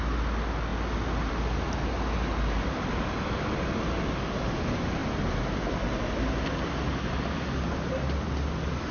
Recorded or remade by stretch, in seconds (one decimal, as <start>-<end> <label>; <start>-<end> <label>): 0.0-8.9 recorded